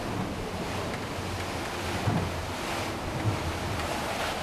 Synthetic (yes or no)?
no